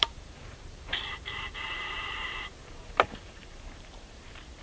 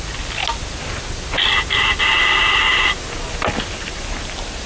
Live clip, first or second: second